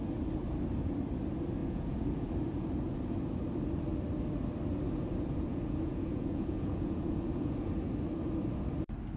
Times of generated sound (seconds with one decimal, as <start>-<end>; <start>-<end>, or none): 1.6-2.3; 5.5-7.7